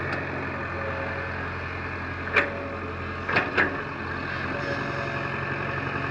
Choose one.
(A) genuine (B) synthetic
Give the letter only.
A